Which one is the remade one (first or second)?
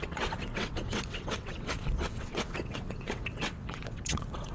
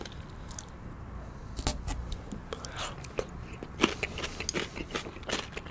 first